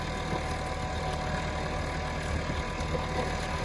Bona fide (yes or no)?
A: yes